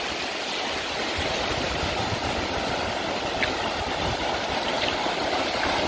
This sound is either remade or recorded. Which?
recorded